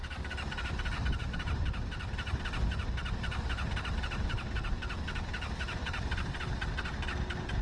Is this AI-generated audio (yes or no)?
yes